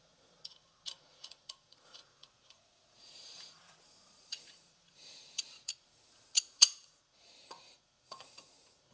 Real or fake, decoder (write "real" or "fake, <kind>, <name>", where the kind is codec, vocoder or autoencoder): fake, vocoder, Vocos